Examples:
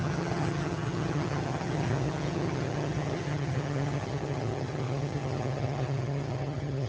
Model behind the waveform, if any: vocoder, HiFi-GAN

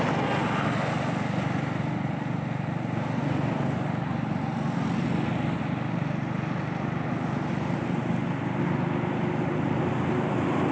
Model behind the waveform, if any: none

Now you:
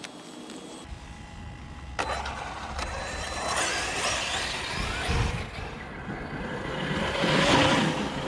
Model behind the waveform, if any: none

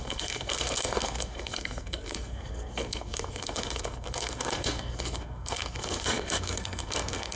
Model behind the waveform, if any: codec, SNAC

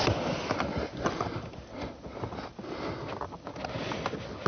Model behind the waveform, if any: none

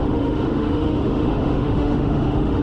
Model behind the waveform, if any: autoencoder, DAC-VAE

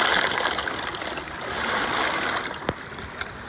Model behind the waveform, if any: none